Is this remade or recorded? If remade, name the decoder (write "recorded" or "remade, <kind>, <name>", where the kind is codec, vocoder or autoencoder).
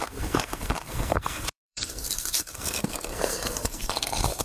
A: remade, codec, SNAC